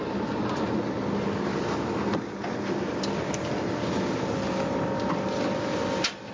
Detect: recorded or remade recorded